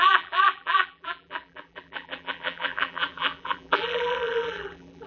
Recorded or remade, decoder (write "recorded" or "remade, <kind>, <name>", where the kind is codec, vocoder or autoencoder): remade, vocoder, BigVGAN v2